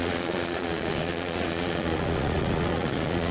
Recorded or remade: remade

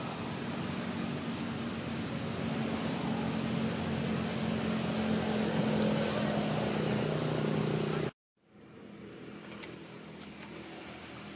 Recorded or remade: recorded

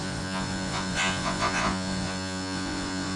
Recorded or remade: remade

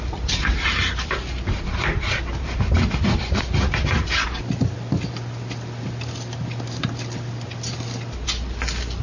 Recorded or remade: recorded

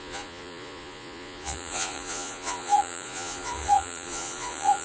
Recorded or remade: remade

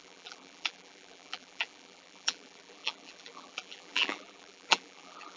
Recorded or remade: remade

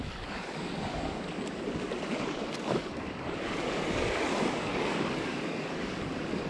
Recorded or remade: remade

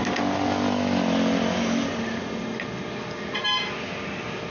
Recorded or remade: recorded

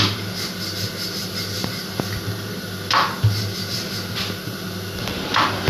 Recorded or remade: recorded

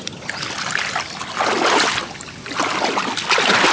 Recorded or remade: recorded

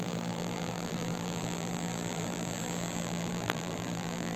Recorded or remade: remade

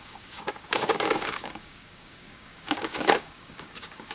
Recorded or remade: remade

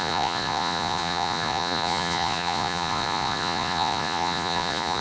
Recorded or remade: remade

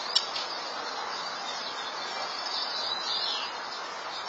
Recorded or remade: recorded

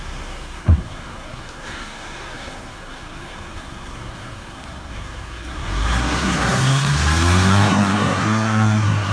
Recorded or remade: remade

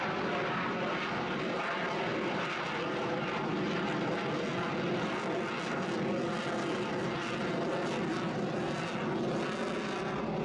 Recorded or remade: recorded